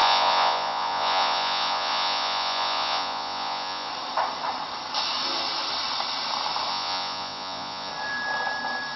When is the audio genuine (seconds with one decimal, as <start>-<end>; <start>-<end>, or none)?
3.9-6.7; 7.9-9.0